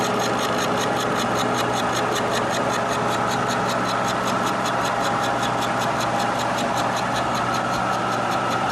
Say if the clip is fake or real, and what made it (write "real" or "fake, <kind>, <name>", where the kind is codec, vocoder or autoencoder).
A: real